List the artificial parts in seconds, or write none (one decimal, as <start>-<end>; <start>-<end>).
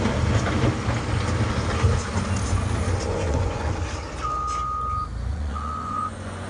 3.1-3.7; 5.3-6.5